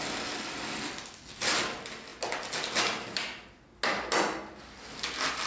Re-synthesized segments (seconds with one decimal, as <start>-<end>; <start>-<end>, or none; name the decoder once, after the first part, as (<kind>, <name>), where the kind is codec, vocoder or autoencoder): none